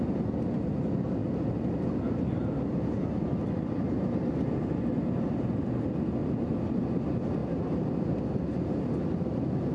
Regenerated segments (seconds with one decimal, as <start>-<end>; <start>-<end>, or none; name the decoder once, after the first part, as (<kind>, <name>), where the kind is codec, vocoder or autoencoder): 6.2-6.8 (vocoder, BigVGAN v2)